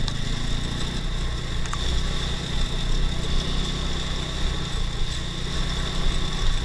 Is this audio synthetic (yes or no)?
no